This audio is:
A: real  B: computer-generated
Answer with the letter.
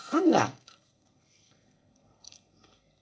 B